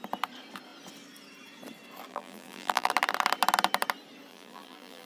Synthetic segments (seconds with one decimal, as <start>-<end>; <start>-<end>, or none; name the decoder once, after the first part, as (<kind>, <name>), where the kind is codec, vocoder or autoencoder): 2.1-2.9 (vocoder, BigVGAN v2); 4.3-5.1